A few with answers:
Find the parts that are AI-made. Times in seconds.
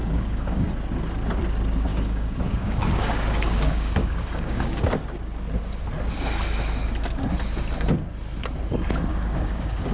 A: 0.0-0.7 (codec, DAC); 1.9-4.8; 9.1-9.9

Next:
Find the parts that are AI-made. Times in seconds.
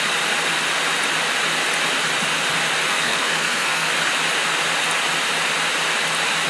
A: 2.9-3.9 (codec, SNAC)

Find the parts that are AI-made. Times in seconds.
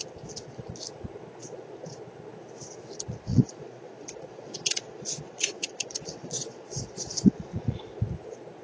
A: 3.3-8.0 (vocoder, Vocos)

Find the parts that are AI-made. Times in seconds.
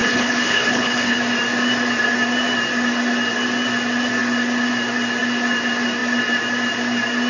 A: 0.0-1.2 (codec, HILCodec)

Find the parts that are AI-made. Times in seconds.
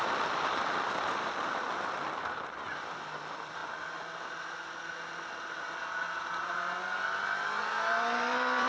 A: 0.0-3.6 (vocoder, BigVGAN v2); 7.6-8.7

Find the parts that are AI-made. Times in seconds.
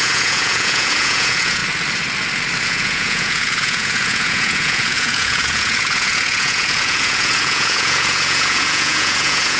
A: 0.0-1.6 (vocoder, Vocos); 2.6-9.6